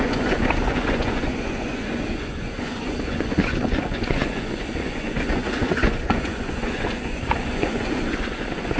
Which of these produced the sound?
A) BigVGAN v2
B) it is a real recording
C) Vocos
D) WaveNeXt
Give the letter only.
C